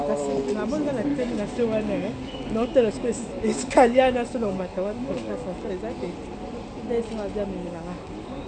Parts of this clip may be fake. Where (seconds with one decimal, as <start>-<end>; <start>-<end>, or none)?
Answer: 1.1-5.7; 7.6-8.5